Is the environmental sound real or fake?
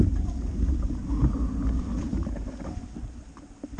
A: real